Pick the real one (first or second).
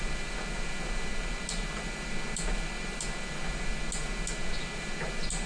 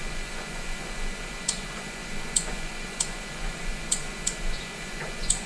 first